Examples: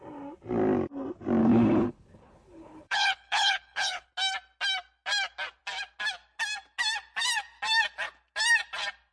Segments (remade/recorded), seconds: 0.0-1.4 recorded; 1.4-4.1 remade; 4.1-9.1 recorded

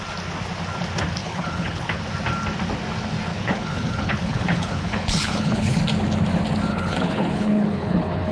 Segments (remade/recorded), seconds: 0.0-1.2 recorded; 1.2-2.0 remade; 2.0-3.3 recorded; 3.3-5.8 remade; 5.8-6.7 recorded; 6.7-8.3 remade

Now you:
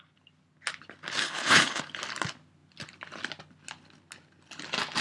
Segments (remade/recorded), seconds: 0.0-1.2 recorded; 1.2-1.8 remade; 1.8-5.0 recorded